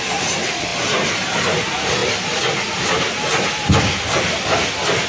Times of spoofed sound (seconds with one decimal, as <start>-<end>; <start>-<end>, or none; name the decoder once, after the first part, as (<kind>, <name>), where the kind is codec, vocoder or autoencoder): none